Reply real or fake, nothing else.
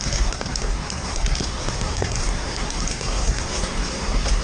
fake